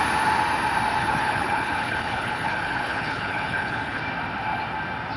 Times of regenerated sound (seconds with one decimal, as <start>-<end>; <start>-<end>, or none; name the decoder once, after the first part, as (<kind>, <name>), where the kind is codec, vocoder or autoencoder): 1.0-4.0 (codec, HILCodec)